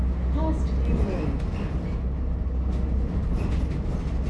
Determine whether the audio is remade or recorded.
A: recorded